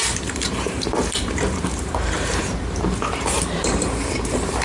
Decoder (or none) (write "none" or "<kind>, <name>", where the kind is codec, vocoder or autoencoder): vocoder, BigVGAN v2